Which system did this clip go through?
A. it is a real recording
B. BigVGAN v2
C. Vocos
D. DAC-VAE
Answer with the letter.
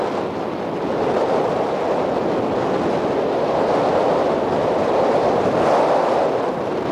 A